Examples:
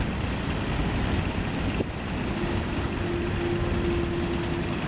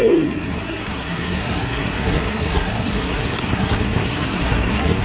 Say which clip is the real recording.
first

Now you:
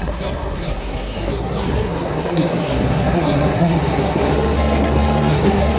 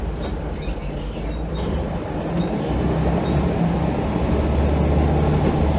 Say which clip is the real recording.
second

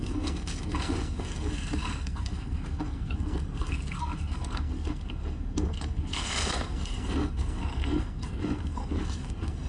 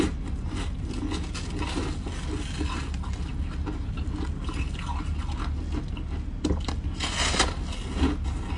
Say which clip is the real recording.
second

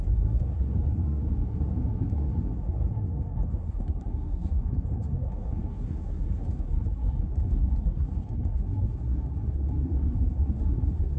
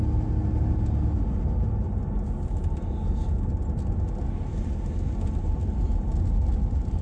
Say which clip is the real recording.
second